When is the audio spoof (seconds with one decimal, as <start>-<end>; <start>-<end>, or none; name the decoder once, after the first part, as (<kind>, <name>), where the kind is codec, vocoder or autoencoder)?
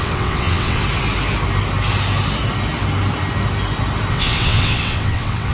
0.0-0.8 (vocoder, WaveNeXt); 4.1-5.5